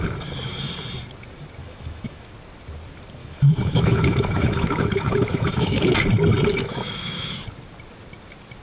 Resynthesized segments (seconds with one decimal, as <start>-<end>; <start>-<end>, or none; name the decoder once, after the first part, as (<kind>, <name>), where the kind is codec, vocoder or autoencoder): 1.6-2.3 (autoencoder, DAC-VAE); 3.2-5.9; 6.5-7.3